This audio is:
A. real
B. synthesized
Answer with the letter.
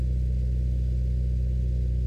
A